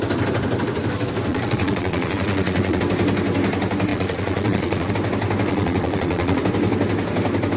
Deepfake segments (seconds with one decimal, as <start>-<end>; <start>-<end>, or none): 1.3-2.8; 3.9-4.9; 5.5-6.4